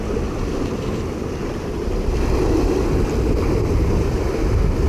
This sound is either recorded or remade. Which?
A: recorded